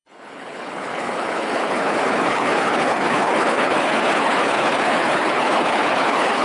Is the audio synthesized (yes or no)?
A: yes